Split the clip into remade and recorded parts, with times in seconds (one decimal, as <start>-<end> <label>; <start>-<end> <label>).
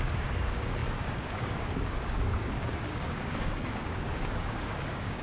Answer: 0.0-5.2 remade